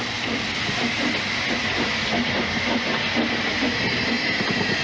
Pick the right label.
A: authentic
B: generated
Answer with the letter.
A